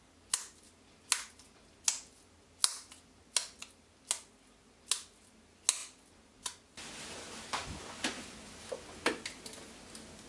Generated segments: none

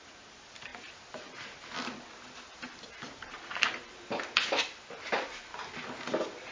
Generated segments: none

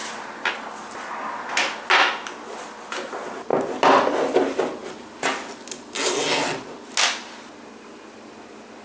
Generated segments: none

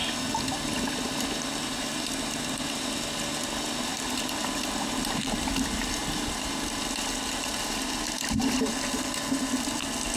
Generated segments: 3.9-4.9 (vocoder, BigVGAN v2); 6.0-9.7

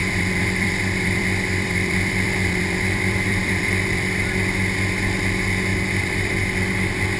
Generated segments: 0.0-4.3 (vocoder, BigVGAN v2); 5.7-6.3

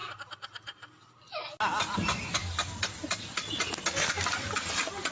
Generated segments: 0.0-1.1 (vocoder, BigVGAN v2)

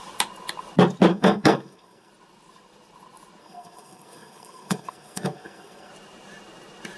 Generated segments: 1.1-2.1 (codec, SNAC); 3.4-5.9